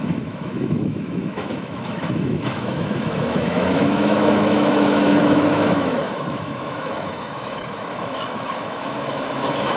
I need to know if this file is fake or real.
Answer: fake